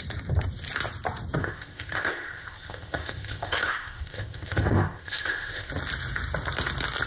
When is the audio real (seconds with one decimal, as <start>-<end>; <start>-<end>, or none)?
0.0-1.4; 5.7-7.1